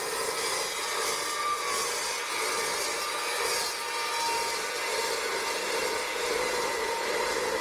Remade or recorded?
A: recorded